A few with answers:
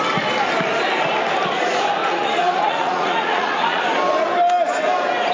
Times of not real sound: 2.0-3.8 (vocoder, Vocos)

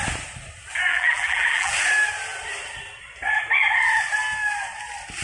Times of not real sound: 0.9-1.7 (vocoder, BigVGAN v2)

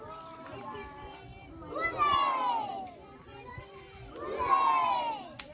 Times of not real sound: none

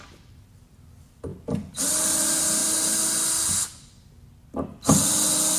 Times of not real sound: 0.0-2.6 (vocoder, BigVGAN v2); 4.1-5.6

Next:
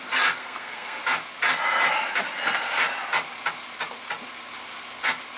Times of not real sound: 0.4-1.0 (codec, SNAC)